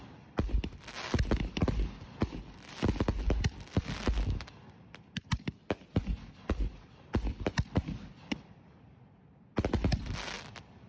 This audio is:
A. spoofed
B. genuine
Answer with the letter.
B